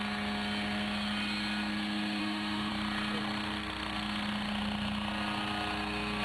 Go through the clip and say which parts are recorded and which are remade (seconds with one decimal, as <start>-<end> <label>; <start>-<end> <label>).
0.0-2.2 recorded; 2.2-2.7 remade; 2.7-6.2 recorded